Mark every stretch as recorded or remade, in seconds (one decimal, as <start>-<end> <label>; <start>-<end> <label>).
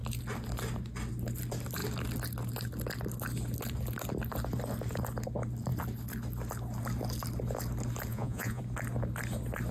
0.0-8.1 recorded; 8.1-8.6 remade; 8.6-9.7 recorded